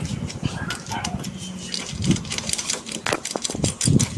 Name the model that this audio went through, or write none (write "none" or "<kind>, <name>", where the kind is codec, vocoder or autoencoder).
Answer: none